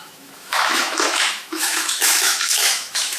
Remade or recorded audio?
remade